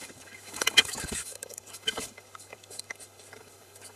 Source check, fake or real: fake